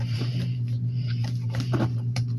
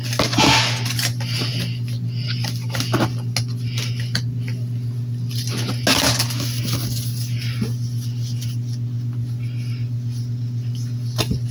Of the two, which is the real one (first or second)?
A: second